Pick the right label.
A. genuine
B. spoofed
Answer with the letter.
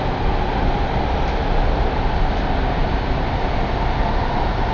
A